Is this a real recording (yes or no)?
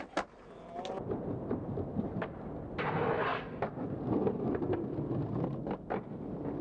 yes